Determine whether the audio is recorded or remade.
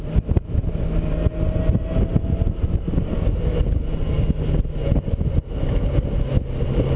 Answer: recorded